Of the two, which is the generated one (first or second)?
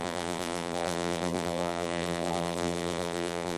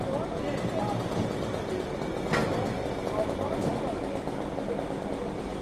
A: first